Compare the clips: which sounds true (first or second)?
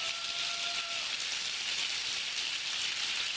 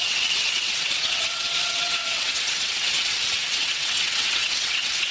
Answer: first